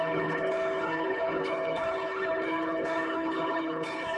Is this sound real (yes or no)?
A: no